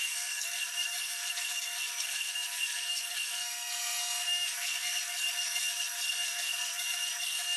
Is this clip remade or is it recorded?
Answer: remade